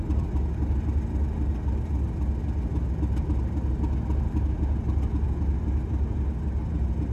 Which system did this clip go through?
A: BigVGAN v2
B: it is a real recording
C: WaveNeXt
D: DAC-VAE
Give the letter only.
B